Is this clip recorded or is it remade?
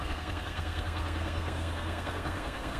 remade